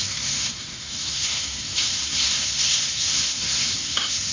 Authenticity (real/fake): fake